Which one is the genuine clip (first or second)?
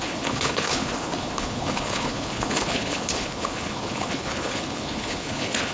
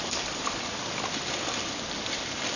second